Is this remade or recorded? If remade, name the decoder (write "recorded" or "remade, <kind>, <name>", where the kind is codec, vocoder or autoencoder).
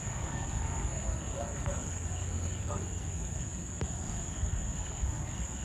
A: remade, codec, SNAC